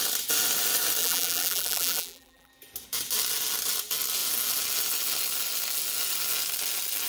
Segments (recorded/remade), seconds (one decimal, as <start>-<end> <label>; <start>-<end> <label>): 0.0-1.0 recorded; 1.0-2.5 remade; 2.5-7.1 recorded